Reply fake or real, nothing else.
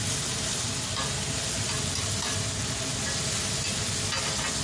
real